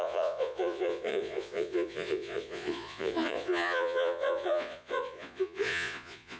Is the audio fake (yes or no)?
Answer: yes